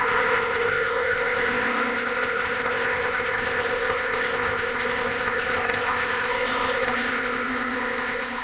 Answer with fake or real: fake